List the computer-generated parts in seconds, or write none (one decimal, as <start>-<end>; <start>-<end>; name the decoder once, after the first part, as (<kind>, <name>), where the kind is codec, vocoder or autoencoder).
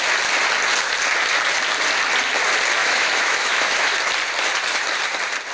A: 2.8-3.9 (autoencoder, DAC-VAE)